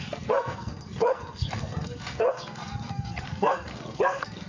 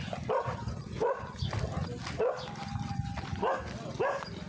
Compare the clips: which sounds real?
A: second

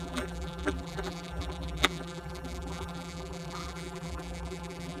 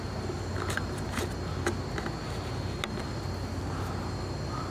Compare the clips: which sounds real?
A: second